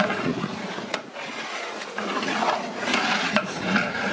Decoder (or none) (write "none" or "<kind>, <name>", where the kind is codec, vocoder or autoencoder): vocoder, Vocos